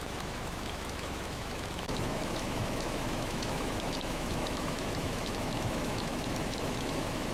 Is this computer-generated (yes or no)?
yes